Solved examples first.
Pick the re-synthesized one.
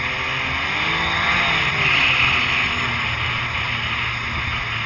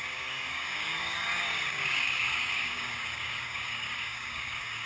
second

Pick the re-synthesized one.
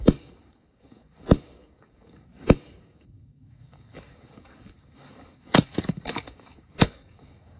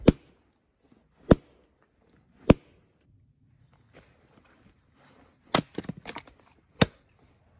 first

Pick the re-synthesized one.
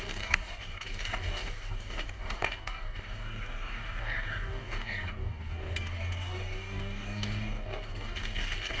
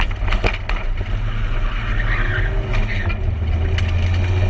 first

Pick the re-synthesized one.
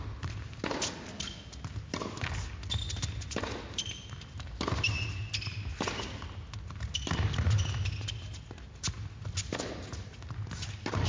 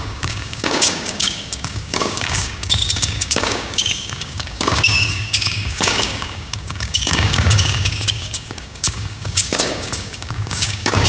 second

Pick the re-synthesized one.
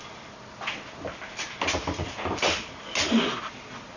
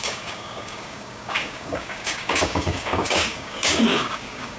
second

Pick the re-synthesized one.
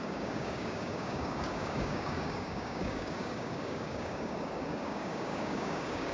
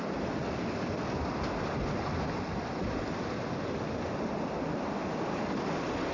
first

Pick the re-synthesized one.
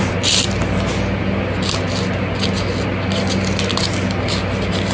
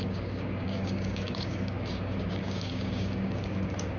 second